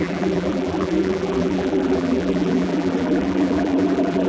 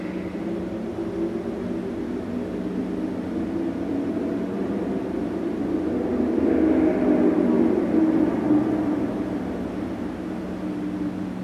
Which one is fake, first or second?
first